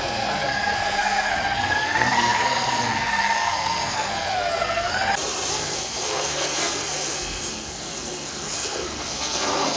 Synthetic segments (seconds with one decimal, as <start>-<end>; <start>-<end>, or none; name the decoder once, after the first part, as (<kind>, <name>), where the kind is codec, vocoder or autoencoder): 0.0-4.9 (codec, SNAC); 5.5-9.8